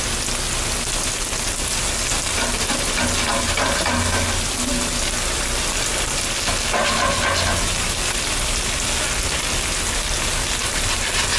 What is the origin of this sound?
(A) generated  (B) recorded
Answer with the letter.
B